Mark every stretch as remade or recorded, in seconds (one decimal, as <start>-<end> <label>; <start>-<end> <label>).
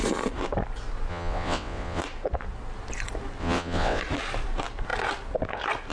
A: 0.0-1.1 recorded; 1.1-2.0 remade; 2.0-3.4 recorded; 3.4-4.0 remade; 4.0-5.9 recorded